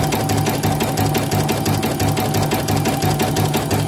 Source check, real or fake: real